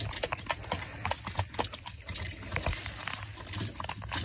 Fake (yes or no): no